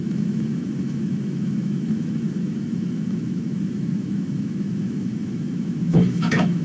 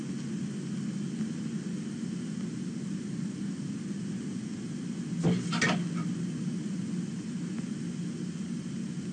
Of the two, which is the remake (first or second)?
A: first